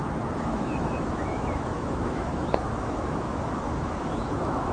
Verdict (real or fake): fake